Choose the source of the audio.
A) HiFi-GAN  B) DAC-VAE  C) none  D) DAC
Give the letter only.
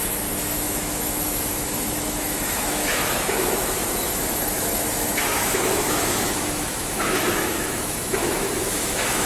B